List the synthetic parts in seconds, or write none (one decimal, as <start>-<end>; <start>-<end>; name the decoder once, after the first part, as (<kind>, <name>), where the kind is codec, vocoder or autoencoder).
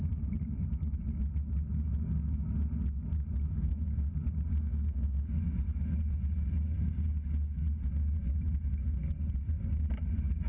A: 3.5-4.1 (codec, SNAC); 4.5-5.4